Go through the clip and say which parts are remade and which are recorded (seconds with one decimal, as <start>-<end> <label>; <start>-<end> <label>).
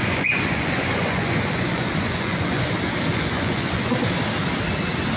0.0-2.7 remade; 2.7-3.1 recorded; 3.1-3.9 remade; 3.9-5.2 recorded